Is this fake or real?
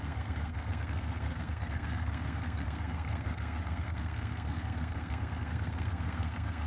fake